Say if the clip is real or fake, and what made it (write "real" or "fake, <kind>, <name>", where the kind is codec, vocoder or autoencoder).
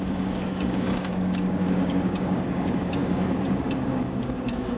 fake, codec, DAC